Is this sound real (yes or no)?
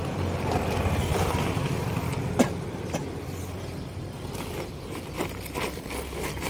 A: yes